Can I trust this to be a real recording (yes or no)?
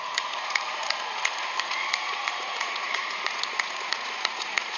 no